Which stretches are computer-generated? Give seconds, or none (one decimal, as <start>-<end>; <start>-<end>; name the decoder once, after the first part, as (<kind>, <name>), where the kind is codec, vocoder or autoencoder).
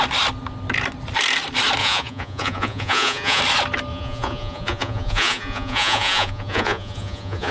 1.8-3.4 (vocoder, Vocos); 3.9-7.5